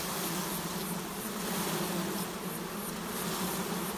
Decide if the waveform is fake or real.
real